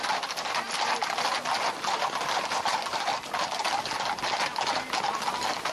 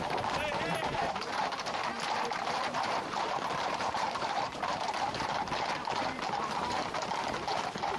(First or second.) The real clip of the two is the first